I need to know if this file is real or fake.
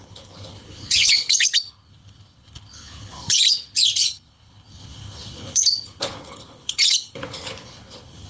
fake